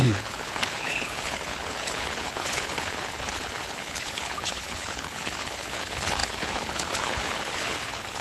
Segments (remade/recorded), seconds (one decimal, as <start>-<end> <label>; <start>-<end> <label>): 0.0-8.2 remade

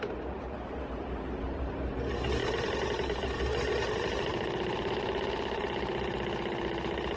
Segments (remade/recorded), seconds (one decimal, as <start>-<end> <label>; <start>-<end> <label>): 0.0-4.3 recorded; 4.3-4.9 remade; 4.9-7.2 recorded